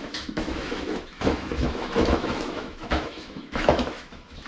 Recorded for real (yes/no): no